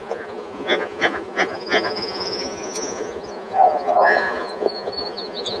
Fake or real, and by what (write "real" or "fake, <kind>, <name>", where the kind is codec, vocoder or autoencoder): fake, vocoder, Vocos